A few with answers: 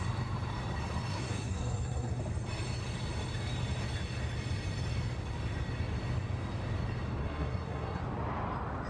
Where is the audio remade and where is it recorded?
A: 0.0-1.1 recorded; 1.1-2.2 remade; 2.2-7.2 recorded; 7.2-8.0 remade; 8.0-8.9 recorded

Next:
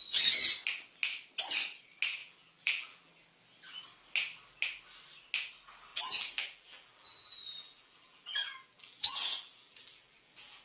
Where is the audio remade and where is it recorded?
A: 0.0-2.2 recorded; 2.2-3.1 remade; 3.1-5.9 recorded; 5.9-10.6 remade

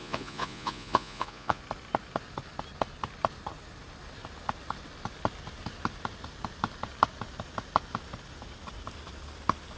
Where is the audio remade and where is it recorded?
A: 0.0-1.6 remade; 1.6-9.8 recorded

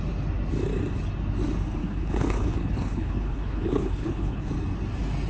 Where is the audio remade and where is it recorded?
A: 0.0-1.8 recorded; 1.8-4.5 remade; 4.5-5.3 recorded

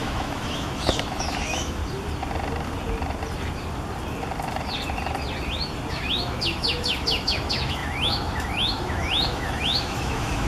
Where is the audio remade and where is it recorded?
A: 0.0-1.8 remade; 1.8-5.9 recorded; 5.9-10.5 remade